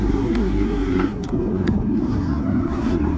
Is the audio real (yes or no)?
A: no